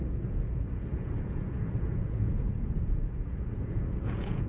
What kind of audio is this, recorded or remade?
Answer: remade